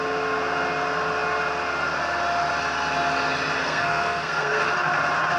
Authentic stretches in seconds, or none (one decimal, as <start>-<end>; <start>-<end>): 0.0-3.6; 4.6-5.4